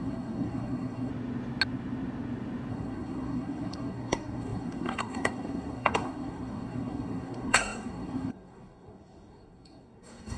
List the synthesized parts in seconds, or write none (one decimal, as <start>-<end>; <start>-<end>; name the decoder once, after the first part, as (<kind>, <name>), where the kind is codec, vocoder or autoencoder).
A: 0.0-1.1 (codec, SNAC); 2.7-10.4